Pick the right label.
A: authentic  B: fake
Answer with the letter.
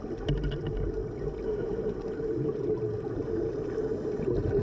A